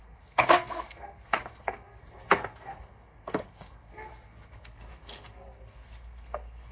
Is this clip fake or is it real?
fake